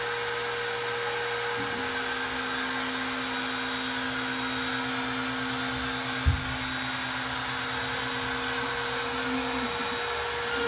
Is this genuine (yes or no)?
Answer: yes